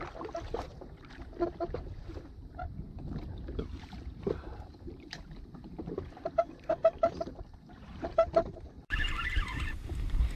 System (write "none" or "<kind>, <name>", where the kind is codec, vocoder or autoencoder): vocoder, BigVGAN v2